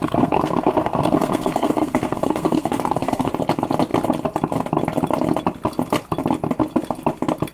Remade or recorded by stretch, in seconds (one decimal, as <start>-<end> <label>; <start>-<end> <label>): 0.0-3.3 remade; 3.3-7.5 recorded